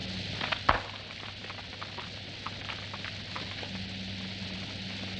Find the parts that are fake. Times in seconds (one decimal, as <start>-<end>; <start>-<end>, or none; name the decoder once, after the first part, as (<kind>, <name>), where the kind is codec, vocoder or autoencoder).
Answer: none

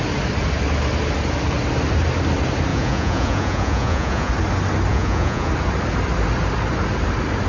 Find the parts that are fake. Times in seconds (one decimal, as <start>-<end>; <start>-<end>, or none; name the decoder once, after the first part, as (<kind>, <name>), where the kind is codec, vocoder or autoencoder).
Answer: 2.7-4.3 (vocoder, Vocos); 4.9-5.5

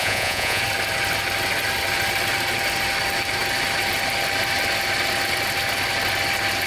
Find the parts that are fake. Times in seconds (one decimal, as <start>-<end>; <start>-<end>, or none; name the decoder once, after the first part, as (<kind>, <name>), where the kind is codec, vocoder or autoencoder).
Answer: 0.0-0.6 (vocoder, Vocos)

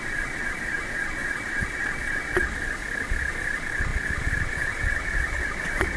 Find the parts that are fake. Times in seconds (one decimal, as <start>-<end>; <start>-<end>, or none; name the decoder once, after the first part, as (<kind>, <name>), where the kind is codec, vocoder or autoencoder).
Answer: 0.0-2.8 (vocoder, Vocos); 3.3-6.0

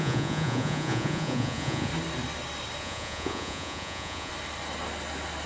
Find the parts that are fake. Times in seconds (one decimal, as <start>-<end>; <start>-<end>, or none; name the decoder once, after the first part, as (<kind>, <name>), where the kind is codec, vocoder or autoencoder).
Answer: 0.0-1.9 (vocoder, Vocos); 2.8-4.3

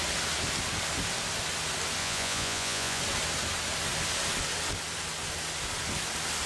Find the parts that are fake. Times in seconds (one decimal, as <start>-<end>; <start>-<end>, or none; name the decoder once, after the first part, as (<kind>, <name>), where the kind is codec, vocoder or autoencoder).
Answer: 2.0-3.0 (vocoder, Vocos)

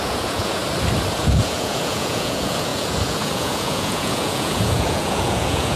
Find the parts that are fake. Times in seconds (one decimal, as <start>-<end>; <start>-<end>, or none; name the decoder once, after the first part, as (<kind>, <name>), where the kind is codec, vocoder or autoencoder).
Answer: 0.0-0.6 (vocoder, Vocos); 1.1-5.8